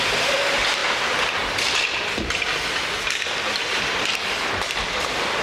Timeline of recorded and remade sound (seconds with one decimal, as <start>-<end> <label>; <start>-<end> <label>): 0.0-5.4 recorded